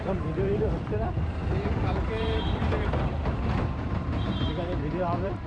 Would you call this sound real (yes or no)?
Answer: no